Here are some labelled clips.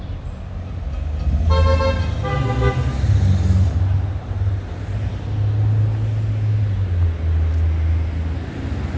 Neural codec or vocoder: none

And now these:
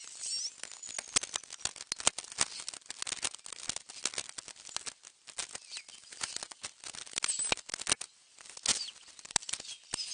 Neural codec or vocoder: none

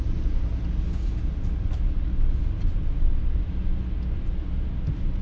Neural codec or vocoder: none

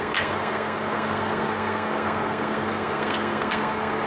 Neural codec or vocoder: codec, SNAC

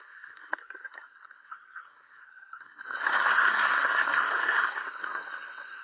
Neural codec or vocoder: codec, SNAC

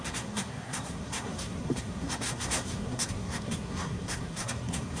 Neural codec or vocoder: codec, SNAC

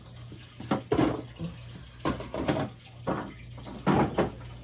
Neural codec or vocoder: none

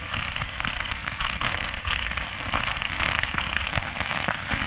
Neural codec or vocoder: codec, SNAC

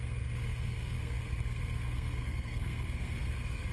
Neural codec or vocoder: codec, SNAC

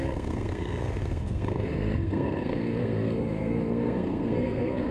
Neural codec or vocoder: codec, SNAC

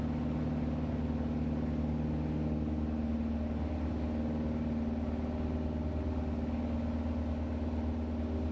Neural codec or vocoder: none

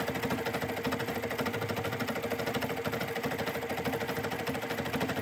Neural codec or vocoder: none